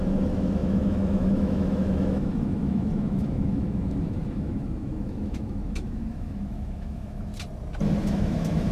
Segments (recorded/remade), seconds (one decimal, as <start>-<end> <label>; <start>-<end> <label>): 0.0-7.3 remade; 7.3-8.0 recorded; 8.0-8.7 remade